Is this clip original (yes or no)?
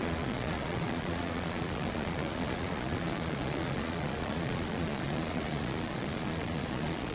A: no